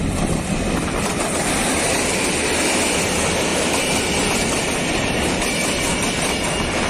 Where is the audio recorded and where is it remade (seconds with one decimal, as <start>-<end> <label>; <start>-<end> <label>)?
0.0-6.9 recorded